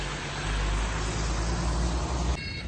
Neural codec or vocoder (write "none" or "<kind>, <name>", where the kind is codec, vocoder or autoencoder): none